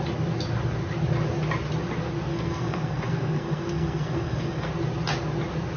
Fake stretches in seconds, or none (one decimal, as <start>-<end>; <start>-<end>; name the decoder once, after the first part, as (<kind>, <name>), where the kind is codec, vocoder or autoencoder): 2.3-4.7 (codec, SNAC)